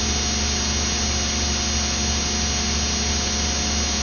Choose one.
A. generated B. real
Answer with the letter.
B